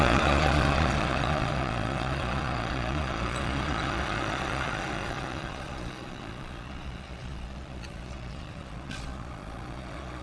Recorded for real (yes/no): no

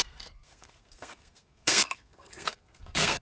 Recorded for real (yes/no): no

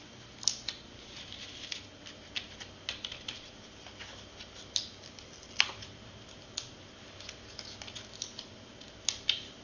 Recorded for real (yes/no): yes